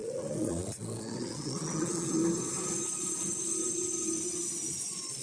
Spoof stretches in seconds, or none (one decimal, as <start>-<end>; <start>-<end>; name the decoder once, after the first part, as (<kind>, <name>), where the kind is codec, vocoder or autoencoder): 0.0-2.2 (vocoder, Vocos); 4.8-5.2

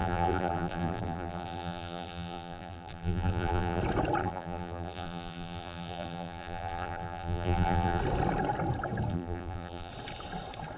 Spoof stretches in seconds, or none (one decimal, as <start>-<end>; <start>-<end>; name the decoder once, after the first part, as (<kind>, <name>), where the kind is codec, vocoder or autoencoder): 0.0-3.8 (vocoder, BigVGAN v2); 4.2-8.0; 9.1-9.9

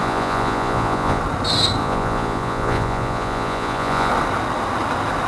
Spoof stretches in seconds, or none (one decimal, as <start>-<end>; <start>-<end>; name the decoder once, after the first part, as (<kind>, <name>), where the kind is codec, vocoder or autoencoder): 0.0-1.2 (vocoder, Vocos); 1.8-4.1

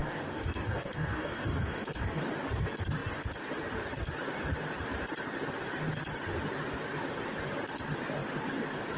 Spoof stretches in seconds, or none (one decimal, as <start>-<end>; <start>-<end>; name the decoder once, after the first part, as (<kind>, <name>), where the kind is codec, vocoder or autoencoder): 0.0-2.2 (codec, DAC)

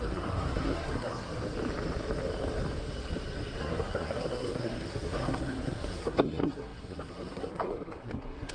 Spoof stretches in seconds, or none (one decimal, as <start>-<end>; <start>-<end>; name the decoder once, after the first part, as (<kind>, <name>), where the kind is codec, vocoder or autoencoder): 0.0-1.3 (codec, SNAC); 3.6-8.5

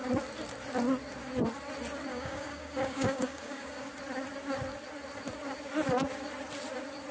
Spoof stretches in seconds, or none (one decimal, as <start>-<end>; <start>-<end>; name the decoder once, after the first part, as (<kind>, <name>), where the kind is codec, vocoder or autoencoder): 2.1-3.9 (codec, DAC)

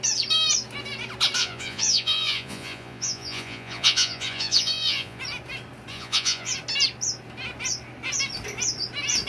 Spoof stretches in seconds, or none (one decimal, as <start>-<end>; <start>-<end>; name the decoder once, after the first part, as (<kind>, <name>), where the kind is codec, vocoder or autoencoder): 1.4-5.2 (vocoder, Vocos); 5.9-6.5